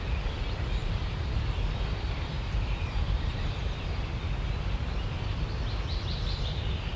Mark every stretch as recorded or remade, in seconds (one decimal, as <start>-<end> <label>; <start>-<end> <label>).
0.0-0.8 recorded; 0.8-4.1 remade; 4.1-7.0 recorded